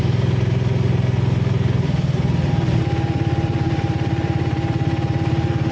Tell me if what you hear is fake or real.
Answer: real